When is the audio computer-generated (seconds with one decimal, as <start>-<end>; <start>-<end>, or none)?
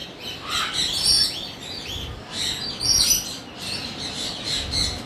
none